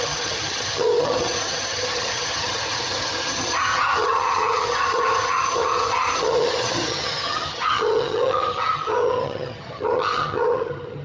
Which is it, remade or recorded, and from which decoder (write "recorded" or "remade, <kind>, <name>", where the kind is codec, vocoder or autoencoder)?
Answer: remade, vocoder, HiFi-GAN